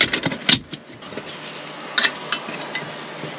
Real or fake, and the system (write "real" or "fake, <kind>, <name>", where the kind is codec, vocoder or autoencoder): real